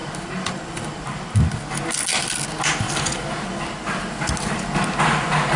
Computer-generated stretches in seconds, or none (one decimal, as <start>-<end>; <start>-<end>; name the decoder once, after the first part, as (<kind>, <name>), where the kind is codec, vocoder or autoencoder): none